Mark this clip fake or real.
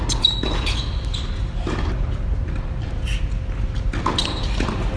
real